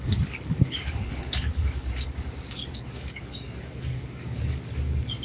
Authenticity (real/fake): fake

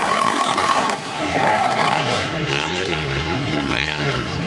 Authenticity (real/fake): fake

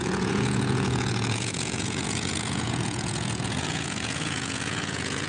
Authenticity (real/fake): fake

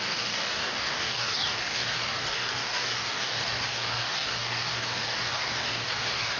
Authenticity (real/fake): fake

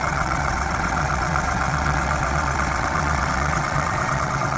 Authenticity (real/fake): fake